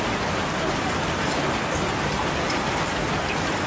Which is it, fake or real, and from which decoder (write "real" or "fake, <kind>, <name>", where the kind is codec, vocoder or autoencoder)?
real